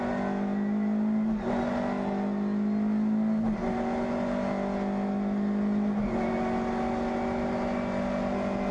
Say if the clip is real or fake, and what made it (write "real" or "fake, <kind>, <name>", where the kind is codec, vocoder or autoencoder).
real